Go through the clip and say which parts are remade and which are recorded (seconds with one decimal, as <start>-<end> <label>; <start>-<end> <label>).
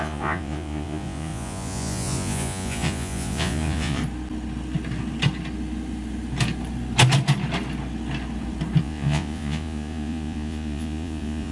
0.0-4.0 remade; 4.0-8.8 recorded; 8.8-11.5 remade